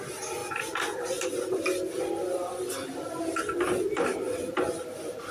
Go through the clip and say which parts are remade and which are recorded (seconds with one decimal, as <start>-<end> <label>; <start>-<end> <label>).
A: 0.0-5.3 recorded